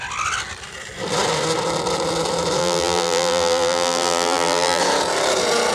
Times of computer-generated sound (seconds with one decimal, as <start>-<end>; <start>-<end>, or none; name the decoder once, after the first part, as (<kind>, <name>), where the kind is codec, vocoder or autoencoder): 2.6-4.8 (vocoder, BigVGAN v2)